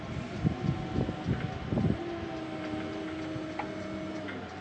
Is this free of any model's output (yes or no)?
yes